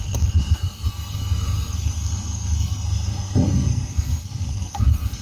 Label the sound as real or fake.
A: fake